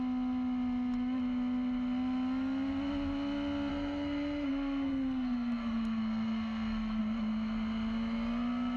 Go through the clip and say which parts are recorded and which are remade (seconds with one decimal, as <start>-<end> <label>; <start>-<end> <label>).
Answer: 0.0-3.7 recorded; 3.7-7.0 remade; 7.0-8.8 recorded